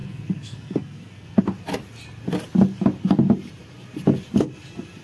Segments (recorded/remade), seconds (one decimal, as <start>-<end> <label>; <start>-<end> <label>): 0.0-1.4 remade; 1.4-5.0 recorded